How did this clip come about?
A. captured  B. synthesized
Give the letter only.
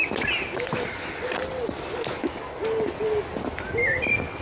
A